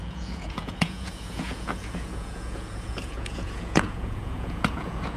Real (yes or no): no